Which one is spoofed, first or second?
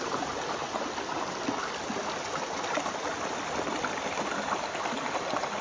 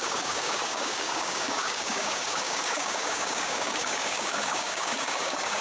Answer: second